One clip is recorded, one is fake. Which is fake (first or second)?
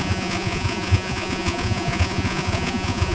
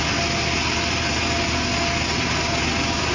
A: first